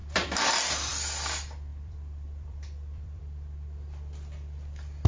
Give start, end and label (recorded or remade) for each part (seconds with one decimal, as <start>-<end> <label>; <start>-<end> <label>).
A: 0.0-0.9 remade; 0.9-1.7 recorded; 1.7-3.2 remade; 3.2-5.1 recorded